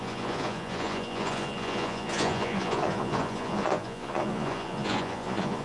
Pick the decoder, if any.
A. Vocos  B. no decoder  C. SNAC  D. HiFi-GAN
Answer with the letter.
A